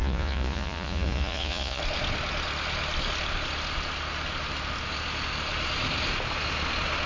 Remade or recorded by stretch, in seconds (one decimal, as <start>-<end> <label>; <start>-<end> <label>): 0.0-1.8 remade; 1.8-7.1 recorded